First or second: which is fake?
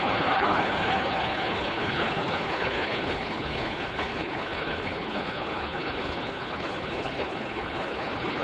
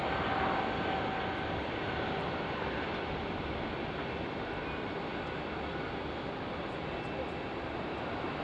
first